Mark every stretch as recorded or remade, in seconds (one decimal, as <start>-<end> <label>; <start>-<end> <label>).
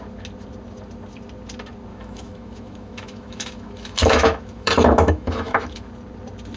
0.0-1.9 recorded; 1.9-5.9 remade; 5.9-6.6 recorded